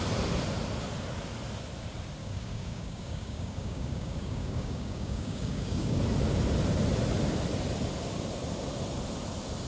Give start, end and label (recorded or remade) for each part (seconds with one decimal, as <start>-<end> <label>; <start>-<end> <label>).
0.0-2.2 recorded; 2.2-6.0 remade; 6.0-9.7 recorded